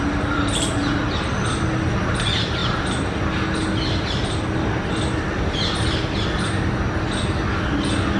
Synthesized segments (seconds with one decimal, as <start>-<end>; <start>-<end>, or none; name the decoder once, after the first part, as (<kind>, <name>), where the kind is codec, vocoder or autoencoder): none